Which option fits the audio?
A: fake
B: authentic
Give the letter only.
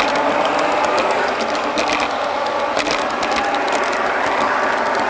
B